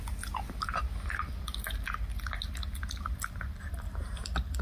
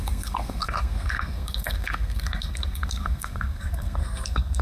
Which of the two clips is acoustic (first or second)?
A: first